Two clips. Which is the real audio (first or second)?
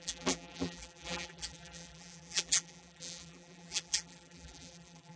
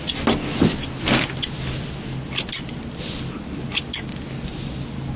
second